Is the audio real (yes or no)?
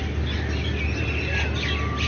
yes